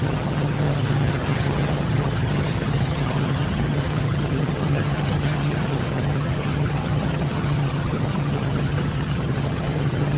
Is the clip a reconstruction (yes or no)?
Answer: yes